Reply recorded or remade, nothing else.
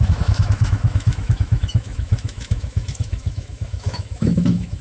remade